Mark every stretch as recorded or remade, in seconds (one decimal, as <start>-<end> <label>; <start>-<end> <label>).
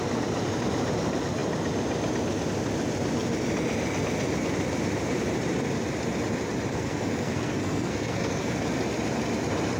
0.0-6.7 recorded; 6.7-8.6 remade; 8.6-9.8 recorded